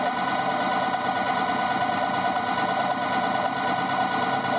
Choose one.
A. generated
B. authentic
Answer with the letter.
B